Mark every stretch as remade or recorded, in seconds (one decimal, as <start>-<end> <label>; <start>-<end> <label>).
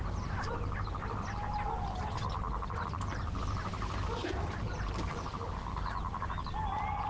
0.0-7.1 recorded